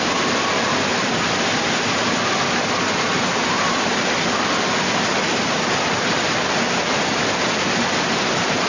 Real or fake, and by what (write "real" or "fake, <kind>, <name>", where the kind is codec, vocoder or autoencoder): real